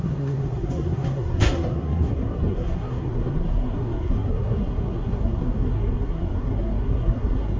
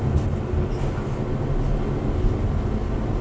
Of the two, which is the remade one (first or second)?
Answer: first